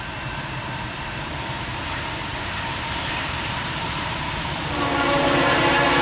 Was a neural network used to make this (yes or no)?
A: yes